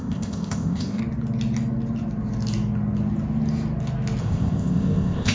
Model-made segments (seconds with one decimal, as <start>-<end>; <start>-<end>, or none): 0.0-1.0; 4.2-5.3